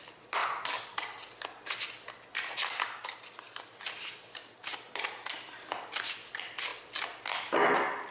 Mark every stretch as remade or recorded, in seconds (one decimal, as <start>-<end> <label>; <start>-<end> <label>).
0.0-8.1 recorded